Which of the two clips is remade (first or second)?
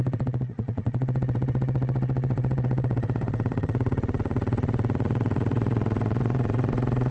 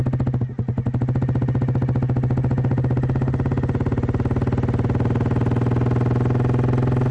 first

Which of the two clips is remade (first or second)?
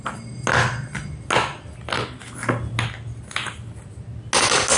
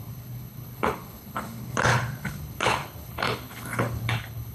second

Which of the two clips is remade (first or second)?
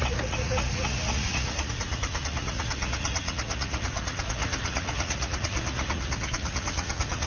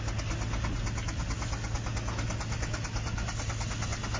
first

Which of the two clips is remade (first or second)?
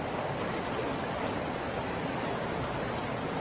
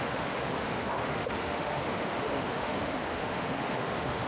second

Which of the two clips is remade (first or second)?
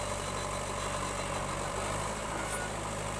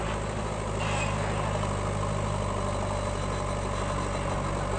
first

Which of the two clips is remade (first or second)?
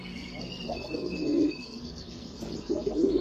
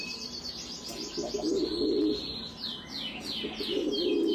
first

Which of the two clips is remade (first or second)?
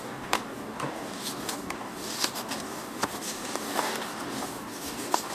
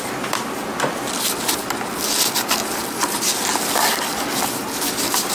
first